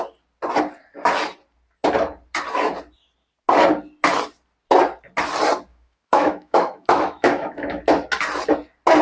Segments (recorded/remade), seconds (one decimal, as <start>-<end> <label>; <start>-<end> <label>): 0.0-5.7 recorded; 5.7-7.8 remade; 7.8-9.0 recorded

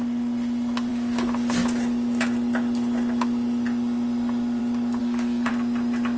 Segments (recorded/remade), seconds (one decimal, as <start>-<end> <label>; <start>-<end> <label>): 0.0-5.0 recorded; 5.0-5.5 remade; 5.5-6.2 recorded

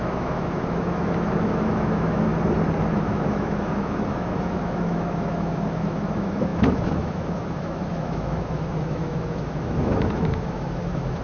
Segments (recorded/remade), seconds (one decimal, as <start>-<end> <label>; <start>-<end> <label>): 0.0-2.3 remade; 2.3-2.9 recorded; 2.9-11.2 remade

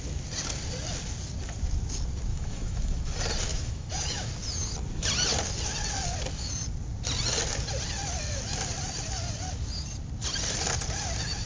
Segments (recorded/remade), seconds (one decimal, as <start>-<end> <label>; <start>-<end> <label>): 0.0-2.3 recorded; 2.3-3.1 remade; 3.1-3.5 recorded; 3.5-4.3 remade; 4.3-11.5 recorded

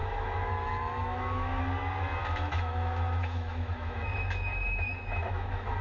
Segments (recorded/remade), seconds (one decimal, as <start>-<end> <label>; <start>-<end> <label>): 0.0-1.6 remade; 1.6-2.2 recorded; 2.2-5.8 remade

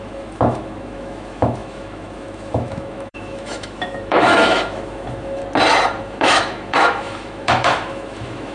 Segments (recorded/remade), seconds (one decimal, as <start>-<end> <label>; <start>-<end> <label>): 0.0-5.4 remade; 5.4-6.0 recorded; 6.0-8.5 remade